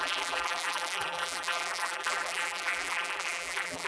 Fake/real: fake